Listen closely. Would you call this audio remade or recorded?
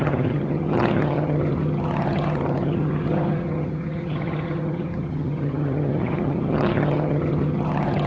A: remade